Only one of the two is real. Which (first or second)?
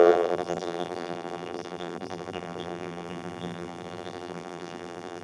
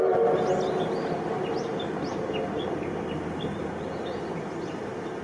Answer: second